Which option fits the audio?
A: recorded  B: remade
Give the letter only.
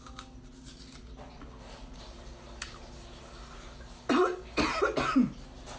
A